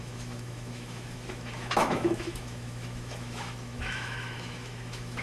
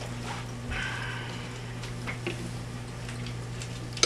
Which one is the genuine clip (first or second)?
second